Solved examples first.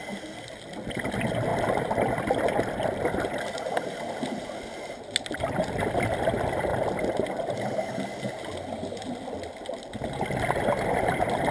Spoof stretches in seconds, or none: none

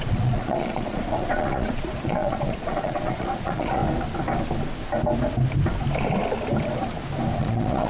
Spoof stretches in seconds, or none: 0.0-3.8 (vocoder, Vocos); 7.4-7.9

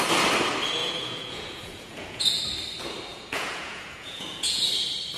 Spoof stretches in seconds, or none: 0.8-2.4 (vocoder, Vocos); 3.1-4.7